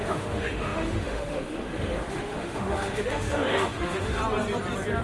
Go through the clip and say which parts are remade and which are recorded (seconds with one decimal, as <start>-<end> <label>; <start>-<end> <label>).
0.0-4.2 remade; 4.2-5.0 recorded